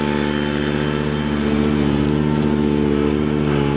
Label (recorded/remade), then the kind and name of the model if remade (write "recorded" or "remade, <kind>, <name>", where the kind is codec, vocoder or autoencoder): recorded